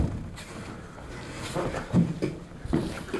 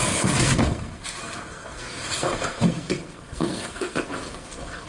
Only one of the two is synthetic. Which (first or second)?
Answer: second